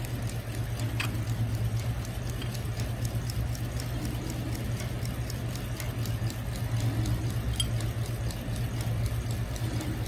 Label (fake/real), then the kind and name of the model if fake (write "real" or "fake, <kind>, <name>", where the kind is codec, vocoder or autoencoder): real